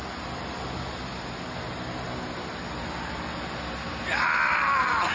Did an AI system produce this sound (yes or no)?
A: no